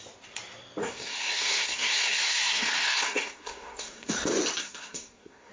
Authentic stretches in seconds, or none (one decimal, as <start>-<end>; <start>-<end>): 0.0-0.8; 4.1-4.6